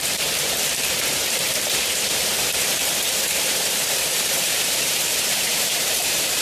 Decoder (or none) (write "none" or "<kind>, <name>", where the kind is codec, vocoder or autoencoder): vocoder, BigVGAN v2